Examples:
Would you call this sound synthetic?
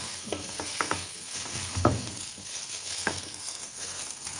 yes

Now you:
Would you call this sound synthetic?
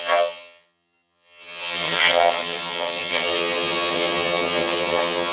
yes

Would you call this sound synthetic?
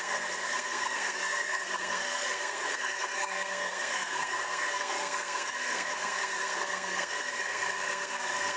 yes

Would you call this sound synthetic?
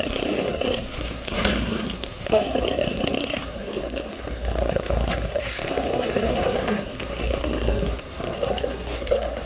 yes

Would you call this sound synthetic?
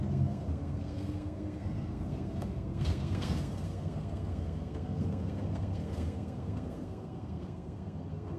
yes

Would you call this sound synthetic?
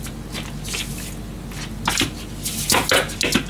no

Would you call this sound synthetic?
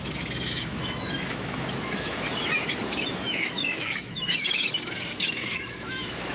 yes